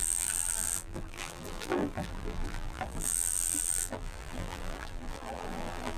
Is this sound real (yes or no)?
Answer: no